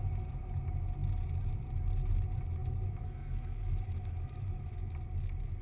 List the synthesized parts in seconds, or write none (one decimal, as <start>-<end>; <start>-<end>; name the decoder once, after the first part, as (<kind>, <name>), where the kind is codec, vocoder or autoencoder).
2.6-4.9 (autoencoder, DAC-VAE)